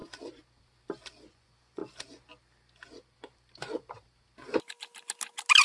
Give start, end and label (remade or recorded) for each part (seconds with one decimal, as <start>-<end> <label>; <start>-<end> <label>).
0.0-1.3 recorded; 1.3-1.8 remade; 1.8-5.6 recorded